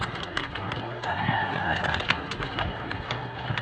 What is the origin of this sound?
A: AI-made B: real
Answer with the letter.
A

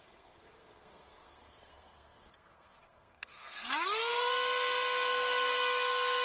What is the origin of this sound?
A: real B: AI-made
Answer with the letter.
B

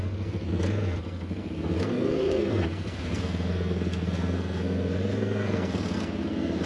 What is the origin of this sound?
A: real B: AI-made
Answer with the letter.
B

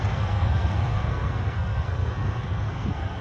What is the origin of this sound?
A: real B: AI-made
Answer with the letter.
B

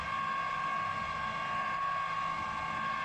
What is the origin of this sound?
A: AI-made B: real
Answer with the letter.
B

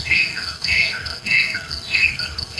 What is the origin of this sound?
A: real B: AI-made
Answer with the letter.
B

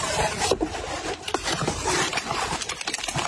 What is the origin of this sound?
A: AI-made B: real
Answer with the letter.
B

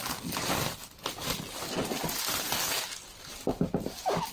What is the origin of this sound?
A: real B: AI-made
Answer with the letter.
A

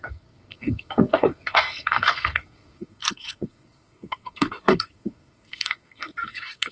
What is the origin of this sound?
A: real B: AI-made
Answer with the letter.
B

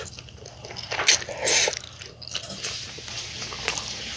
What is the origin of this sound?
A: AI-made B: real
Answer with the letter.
B